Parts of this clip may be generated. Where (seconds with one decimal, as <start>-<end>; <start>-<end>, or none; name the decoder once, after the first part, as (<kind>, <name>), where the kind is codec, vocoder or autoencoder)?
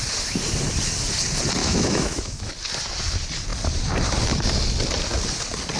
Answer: 1.6-2.5 (autoencoder, DAC-VAE)